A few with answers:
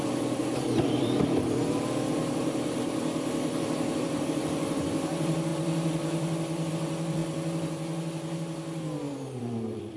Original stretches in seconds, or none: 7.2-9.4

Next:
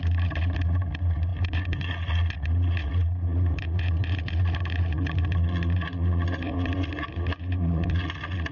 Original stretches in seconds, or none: none

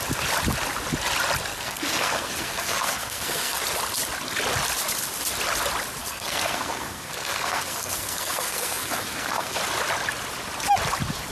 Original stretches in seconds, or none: 0.0-1.5; 3.6-6.0; 9.6-11.3

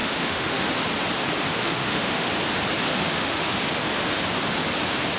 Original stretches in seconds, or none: 0.7-1.5; 2.3-2.9; 3.6-5.2